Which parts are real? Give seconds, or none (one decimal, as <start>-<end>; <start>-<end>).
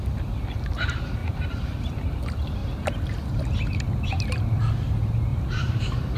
0.0-1.2; 2.2-5.3